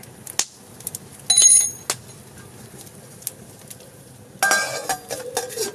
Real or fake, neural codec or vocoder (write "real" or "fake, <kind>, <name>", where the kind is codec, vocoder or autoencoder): real